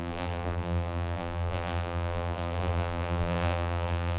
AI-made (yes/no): yes